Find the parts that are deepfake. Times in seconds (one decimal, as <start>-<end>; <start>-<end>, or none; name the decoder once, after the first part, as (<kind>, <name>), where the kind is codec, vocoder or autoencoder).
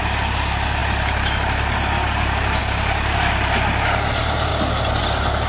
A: none